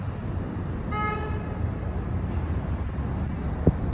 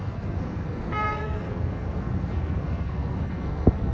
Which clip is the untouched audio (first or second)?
first